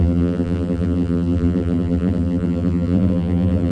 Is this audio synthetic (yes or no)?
yes